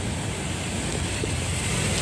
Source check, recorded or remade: recorded